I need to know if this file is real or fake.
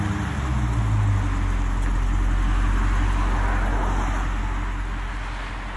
real